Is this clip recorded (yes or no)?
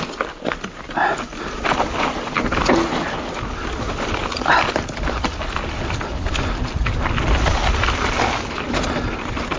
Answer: yes